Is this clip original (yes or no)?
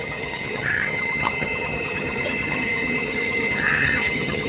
no